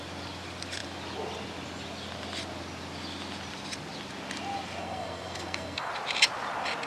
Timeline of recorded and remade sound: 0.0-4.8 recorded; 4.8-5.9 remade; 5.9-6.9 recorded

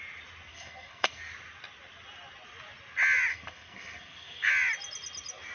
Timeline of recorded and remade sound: 0.0-0.5 recorded; 0.5-1.2 remade; 1.2-3.3 recorded; 3.3-4.5 remade; 4.5-5.5 recorded

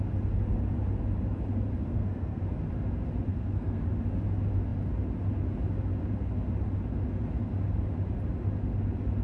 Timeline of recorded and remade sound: 0.0-1.9 recorded; 1.9-2.4 remade; 2.4-3.3 recorded; 3.3-3.8 remade; 3.8-9.2 recorded